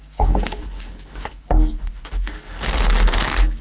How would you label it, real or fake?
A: fake